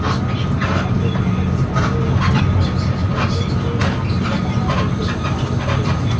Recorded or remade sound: recorded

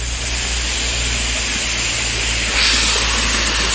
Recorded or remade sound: recorded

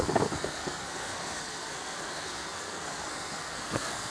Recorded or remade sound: remade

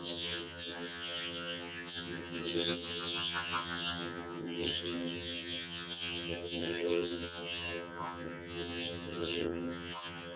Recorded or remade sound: remade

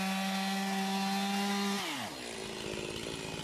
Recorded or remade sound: recorded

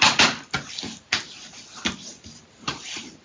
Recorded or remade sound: recorded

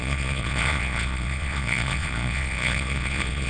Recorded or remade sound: remade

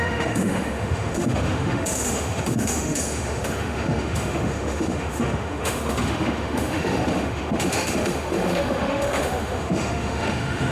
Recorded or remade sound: remade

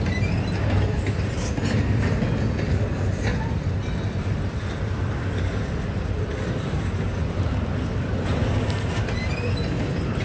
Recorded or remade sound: recorded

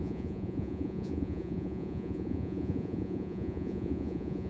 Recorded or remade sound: remade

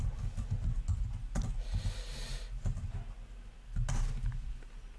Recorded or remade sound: recorded